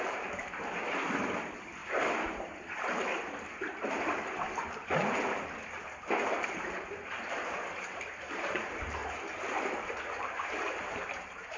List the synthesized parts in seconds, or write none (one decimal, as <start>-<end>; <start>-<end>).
0.0-1.8; 3.9-9.0; 10.0-11.6